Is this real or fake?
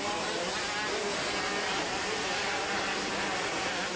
real